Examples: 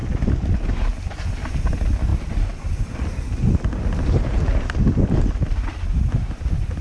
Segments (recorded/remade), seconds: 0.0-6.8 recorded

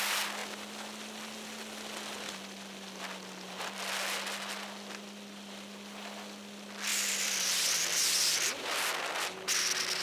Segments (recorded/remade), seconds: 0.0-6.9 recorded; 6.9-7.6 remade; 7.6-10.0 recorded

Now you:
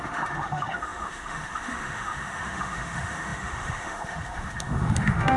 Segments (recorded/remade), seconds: 0.0-5.4 remade

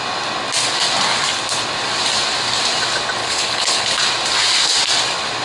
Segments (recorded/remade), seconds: 0.0-3.2 recorded; 3.2-3.9 remade; 3.9-5.4 recorded